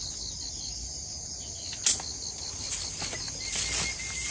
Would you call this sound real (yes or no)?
yes